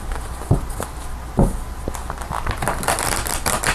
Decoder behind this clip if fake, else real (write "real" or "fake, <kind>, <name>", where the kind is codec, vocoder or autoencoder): real